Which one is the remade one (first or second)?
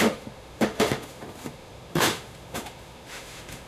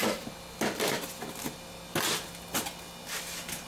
first